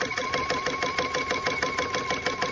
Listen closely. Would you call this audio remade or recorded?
recorded